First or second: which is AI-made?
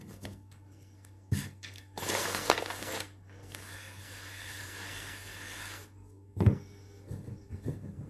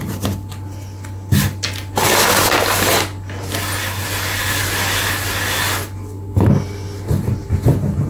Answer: first